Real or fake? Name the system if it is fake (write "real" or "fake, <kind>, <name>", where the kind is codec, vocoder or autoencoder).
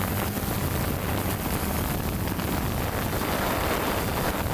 real